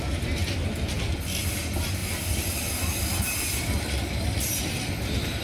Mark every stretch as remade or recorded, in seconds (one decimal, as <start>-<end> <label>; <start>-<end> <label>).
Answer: 0.0-0.4 recorded; 0.4-1.2 remade; 1.2-2.0 recorded; 2.0-4.6 remade; 4.6-5.4 recorded